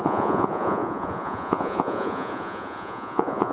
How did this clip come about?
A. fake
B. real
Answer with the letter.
A